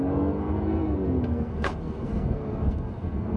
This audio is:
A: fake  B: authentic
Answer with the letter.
A